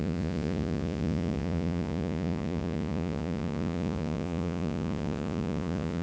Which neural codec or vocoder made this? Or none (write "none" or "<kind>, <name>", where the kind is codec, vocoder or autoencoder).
vocoder, Vocos